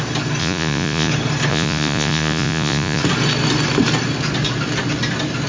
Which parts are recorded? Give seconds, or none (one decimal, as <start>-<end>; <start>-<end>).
0.0-0.4; 1.1-1.5; 3.0-5.5